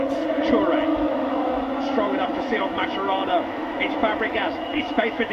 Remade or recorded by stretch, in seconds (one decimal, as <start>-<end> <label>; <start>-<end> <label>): 0.0-0.9 recorded; 0.9-1.7 remade; 1.7-2.3 recorded; 2.3-5.3 remade